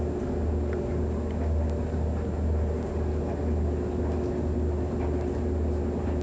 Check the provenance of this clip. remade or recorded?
recorded